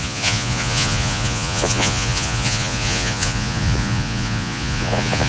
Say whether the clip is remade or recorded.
remade